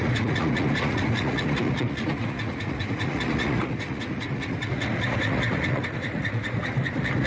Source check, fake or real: fake